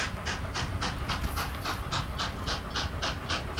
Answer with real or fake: real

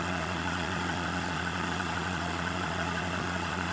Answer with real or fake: fake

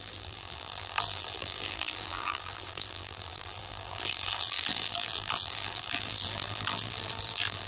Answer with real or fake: fake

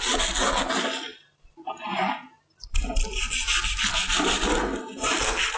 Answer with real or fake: real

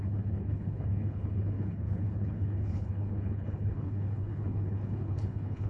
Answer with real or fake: fake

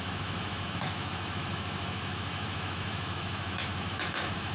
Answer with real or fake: fake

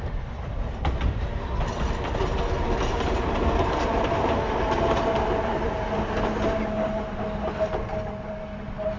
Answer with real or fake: real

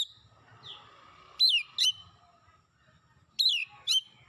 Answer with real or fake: real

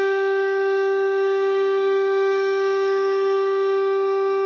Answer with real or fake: fake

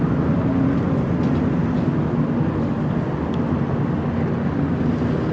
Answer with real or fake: real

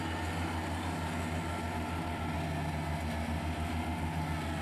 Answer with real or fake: real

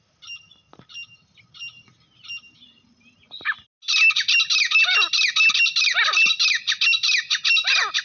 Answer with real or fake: real